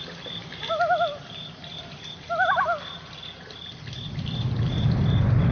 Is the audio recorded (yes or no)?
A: yes